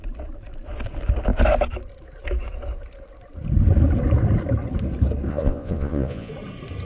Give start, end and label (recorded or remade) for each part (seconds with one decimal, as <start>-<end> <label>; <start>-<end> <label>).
0.0-5.3 recorded; 5.3-6.3 remade; 6.3-6.8 recorded